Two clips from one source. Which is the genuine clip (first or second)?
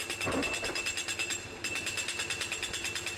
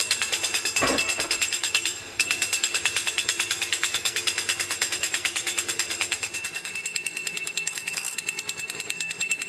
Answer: first